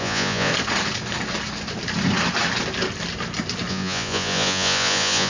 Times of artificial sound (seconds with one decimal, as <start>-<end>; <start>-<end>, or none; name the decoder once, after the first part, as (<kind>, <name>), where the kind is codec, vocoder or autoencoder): 0.0-0.5 (vocoder, Vocos); 3.7-5.3